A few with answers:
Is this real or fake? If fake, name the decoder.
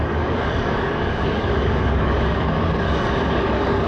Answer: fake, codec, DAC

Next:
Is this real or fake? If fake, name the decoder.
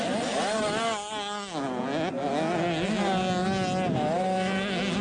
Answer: real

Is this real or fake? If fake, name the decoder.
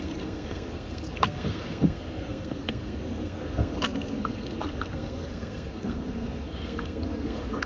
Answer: fake, codec, SNAC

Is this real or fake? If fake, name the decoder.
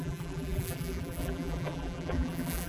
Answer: fake, vocoder, BigVGAN v2